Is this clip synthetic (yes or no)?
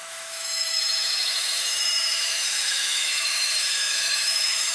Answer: yes